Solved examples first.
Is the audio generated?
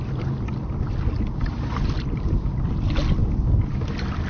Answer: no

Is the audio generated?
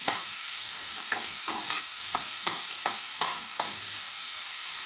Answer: yes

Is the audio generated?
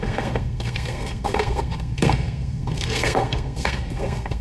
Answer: yes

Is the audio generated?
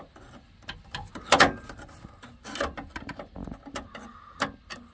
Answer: no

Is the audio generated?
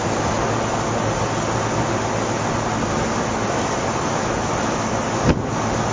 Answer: no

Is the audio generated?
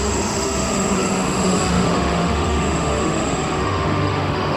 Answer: yes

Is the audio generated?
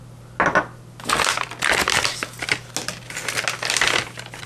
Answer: no